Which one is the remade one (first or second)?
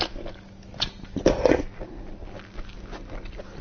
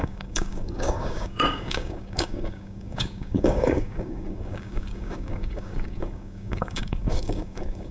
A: second